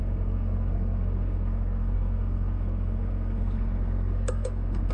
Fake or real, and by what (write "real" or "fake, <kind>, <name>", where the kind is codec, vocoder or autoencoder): fake, codec, SNAC